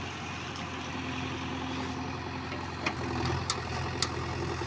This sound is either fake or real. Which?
real